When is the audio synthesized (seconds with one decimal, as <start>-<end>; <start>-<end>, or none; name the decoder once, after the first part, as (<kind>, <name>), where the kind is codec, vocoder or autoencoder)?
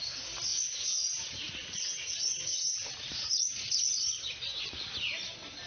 0.5-3.9 (vocoder, Vocos)